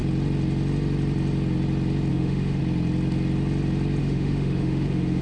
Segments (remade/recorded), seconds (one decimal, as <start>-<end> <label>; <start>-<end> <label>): 0.0-2.1 recorded; 2.1-2.6 remade; 2.6-4.0 recorded; 4.0-5.2 remade